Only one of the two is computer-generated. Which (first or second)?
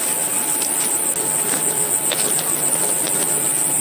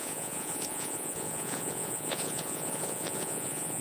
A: second